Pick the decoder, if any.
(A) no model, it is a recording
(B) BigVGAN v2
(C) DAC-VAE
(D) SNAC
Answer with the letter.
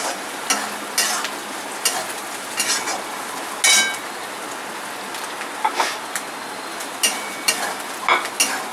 A